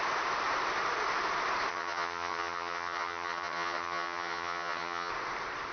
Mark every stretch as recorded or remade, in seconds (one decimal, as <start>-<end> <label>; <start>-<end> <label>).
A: 0.0-1.7 recorded; 1.7-5.1 remade; 5.1-5.7 recorded